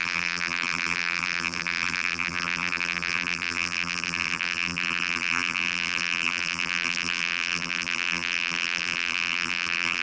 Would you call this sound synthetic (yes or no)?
yes